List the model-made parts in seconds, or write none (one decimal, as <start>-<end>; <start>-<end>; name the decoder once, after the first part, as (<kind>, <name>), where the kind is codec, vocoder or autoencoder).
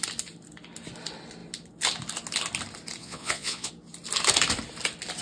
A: 3.0-3.7 (vocoder, Vocos)